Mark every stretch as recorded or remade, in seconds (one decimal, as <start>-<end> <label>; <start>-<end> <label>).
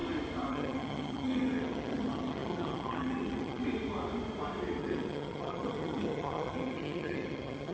0.0-0.5 recorded; 0.5-3.6 remade; 3.6-4.8 recorded; 4.8-7.7 remade